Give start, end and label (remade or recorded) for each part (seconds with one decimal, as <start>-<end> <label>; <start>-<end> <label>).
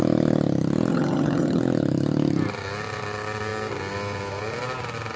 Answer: 0.0-0.9 recorded; 0.9-1.6 remade; 1.6-5.2 recorded